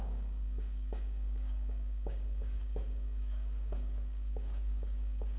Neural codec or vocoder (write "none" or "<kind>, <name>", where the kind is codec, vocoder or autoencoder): codec, DAC